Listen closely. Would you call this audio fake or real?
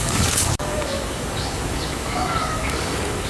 fake